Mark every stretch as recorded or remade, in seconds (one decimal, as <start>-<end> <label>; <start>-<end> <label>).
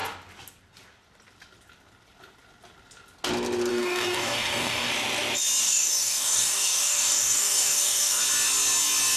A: 0.0-3.7 recorded; 3.7-4.9 remade; 4.9-5.6 recorded; 5.6-8.2 remade; 8.2-9.2 recorded